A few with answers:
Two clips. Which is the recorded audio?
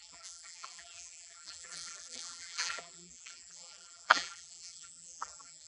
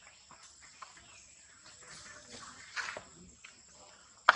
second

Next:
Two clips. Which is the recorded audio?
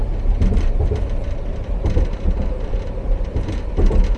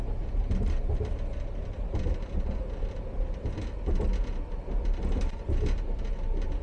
second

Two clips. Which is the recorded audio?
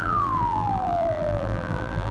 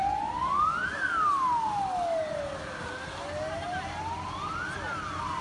second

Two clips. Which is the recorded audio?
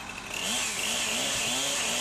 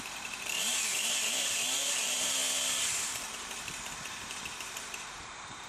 first